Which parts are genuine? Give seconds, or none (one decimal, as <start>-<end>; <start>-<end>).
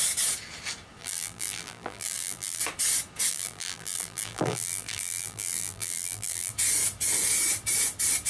0.0-1.0; 2.6-3.3; 6.5-8.3